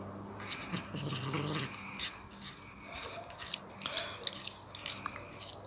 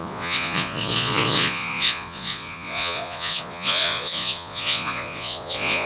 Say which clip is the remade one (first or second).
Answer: second